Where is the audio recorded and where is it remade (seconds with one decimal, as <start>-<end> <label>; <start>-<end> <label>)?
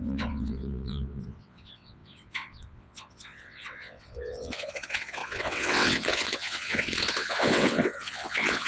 0.0-8.7 remade